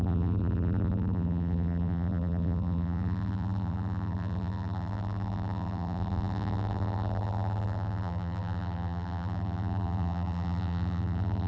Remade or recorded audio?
remade